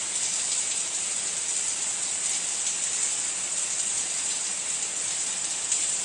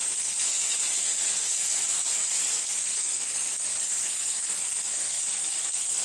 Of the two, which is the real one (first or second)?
first